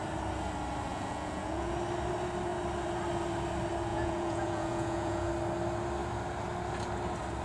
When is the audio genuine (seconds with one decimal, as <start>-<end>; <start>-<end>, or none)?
0.0-0.9; 1.7-3.9; 5.3-7.4